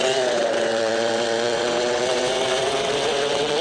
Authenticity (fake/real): fake